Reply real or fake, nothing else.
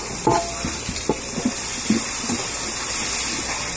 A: fake